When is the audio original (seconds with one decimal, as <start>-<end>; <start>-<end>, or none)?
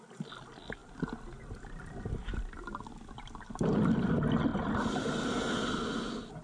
0.0-6.4